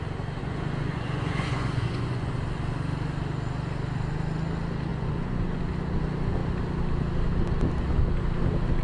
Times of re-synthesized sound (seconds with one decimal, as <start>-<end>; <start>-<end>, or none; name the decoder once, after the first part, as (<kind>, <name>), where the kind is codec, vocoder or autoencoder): 0.4-2.3 (vocoder, Vocos); 4.9-5.6